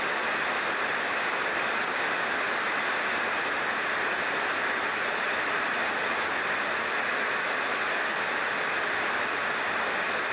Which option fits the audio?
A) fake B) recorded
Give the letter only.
B